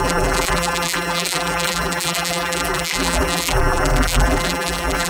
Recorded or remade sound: remade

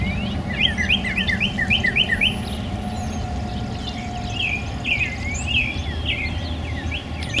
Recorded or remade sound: recorded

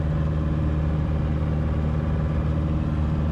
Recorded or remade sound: recorded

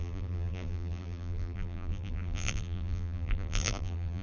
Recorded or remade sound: remade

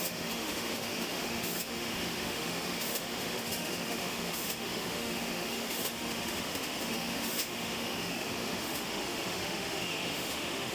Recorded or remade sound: remade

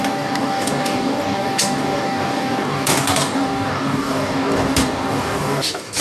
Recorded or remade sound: remade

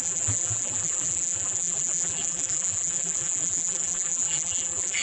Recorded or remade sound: remade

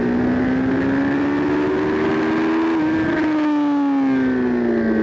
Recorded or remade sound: recorded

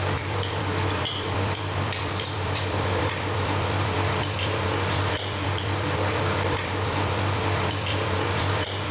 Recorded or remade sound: remade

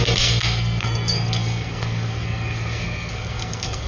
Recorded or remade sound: remade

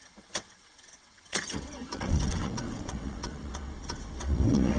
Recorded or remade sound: remade